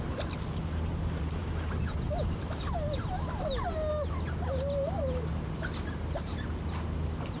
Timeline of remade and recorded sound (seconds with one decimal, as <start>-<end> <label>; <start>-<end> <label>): 0.0-7.4 recorded